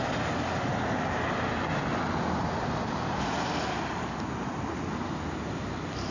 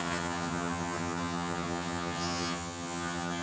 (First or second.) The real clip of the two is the first